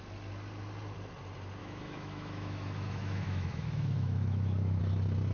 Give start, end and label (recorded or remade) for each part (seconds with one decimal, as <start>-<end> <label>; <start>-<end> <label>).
0.0-1.6 recorded; 1.6-4.8 remade; 4.8-5.3 recorded